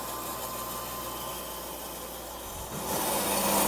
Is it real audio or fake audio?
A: real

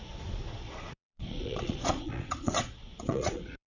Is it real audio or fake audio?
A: fake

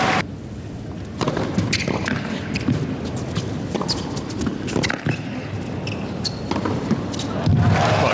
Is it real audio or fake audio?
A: real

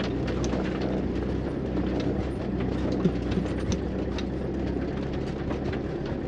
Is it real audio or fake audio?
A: real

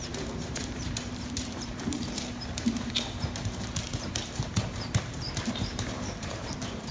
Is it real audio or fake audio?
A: fake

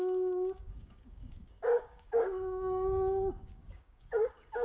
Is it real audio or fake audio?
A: fake